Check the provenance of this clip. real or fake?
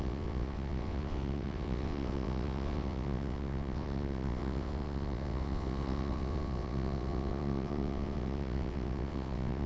fake